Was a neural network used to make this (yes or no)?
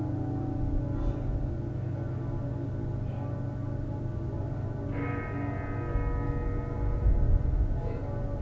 no